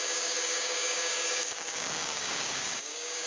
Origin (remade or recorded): remade